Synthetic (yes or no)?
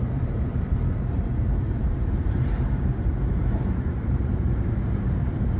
yes